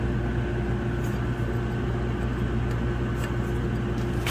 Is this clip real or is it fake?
real